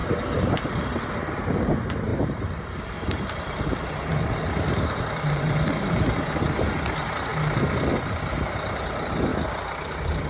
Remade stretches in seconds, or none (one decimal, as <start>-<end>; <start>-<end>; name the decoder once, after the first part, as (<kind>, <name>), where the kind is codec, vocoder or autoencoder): 1.1-9.3 (vocoder, BigVGAN v2)